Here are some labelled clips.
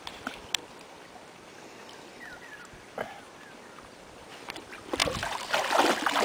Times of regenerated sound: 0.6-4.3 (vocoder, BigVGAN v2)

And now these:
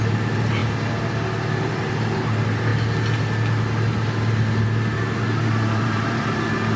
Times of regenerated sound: 0.0-0.6 (vocoder, BigVGAN v2); 1.5-2.7; 4.6-6.8

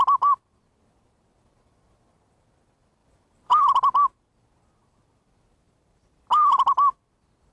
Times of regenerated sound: 3.0-3.6 (vocoder, BigVGAN v2)

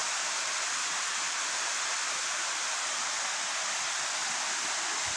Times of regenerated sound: 0.0-3.1 (vocoder, BigVGAN v2)

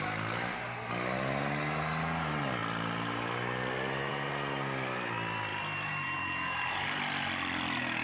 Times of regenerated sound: 5.5-7.0 (vocoder, BigVGAN v2)

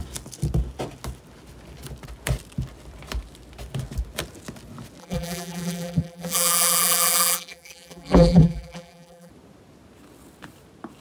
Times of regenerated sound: 5.0-9.3 (vocoder, BigVGAN v2)

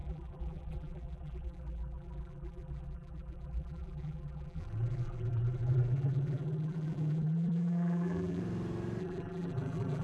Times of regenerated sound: 0.0-8.4 (vocoder, BigVGAN v2); 9.0-10.0